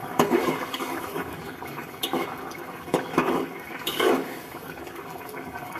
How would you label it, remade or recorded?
remade